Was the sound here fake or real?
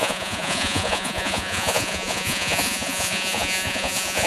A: fake